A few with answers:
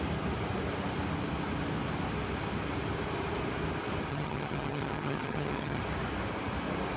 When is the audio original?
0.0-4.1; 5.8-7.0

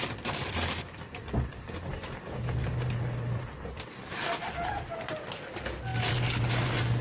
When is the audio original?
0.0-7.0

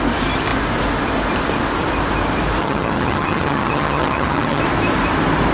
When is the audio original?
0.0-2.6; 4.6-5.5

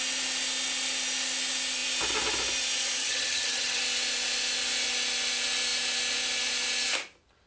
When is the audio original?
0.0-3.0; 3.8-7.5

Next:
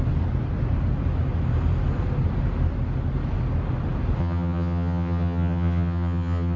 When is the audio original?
0.0-4.2